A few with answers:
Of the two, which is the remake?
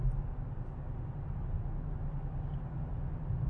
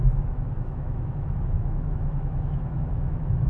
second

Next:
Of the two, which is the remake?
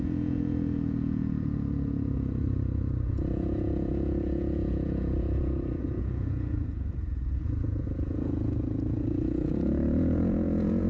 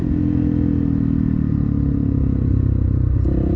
first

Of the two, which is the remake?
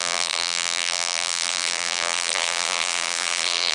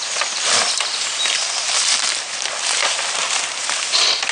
first